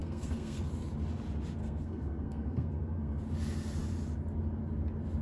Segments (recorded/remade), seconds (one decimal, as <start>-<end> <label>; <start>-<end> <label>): 0.0-0.7 remade; 0.7-1.6 recorded; 1.6-3.2 remade; 3.2-5.2 recorded